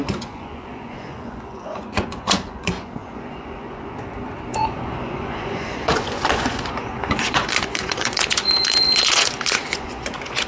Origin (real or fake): fake